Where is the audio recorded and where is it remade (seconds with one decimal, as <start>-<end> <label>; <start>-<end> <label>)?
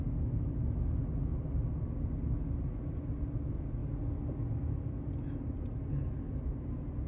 0.0-7.1 recorded